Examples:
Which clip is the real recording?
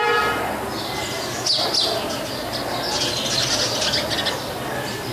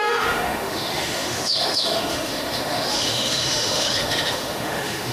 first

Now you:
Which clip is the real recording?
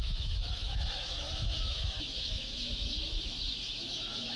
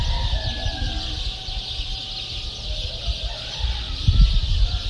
second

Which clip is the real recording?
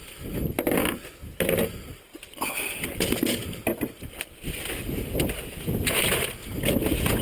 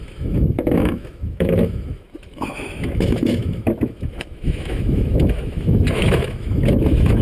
first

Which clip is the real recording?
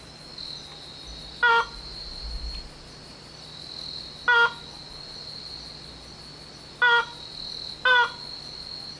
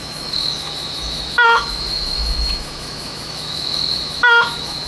first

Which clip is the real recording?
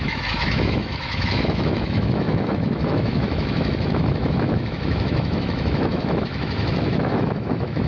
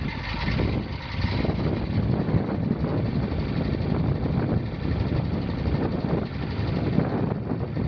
second